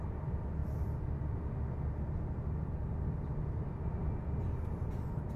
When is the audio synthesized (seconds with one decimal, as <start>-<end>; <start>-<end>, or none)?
none